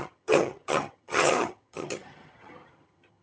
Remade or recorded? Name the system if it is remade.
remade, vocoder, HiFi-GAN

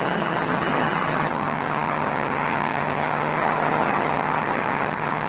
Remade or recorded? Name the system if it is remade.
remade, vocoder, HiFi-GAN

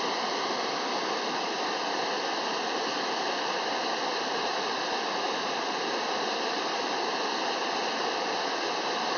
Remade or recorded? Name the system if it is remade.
recorded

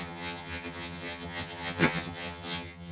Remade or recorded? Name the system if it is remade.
remade, vocoder, HiFi-GAN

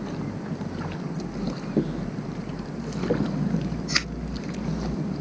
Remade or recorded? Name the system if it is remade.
recorded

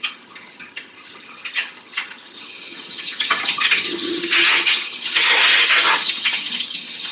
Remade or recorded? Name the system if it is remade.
remade, vocoder, HiFi-GAN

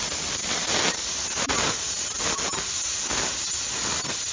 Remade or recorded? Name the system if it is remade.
recorded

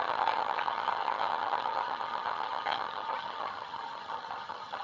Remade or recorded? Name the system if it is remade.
remade, vocoder, HiFi-GAN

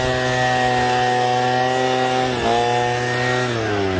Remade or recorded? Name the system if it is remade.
recorded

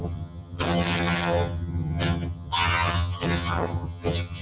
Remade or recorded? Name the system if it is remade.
remade, vocoder, HiFi-GAN